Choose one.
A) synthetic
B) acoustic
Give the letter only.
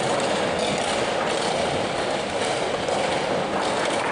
B